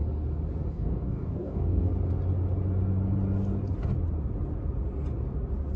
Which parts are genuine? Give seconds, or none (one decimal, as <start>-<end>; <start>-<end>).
0.0-0.7; 1.9-5.8